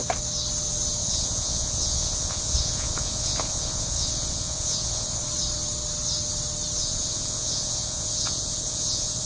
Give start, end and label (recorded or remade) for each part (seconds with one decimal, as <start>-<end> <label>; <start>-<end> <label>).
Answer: 0.0-1.0 recorded; 1.0-5.2 remade; 5.2-6.8 recorded; 6.8-9.3 remade